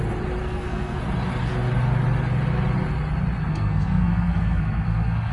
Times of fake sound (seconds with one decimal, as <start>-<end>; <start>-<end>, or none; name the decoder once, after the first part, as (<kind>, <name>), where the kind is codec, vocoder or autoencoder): 0.4-1.0 (codec, SNAC); 3.5-5.3